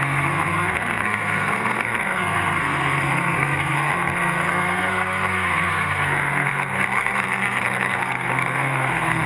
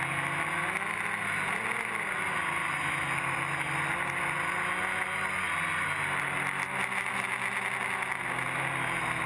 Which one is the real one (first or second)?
second